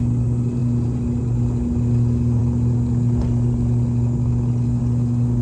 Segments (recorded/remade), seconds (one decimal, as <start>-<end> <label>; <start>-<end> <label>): 0.0-5.4 recorded